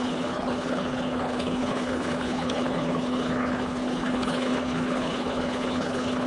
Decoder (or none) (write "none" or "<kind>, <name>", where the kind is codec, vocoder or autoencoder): codec, HILCodec